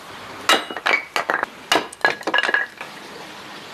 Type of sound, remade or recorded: recorded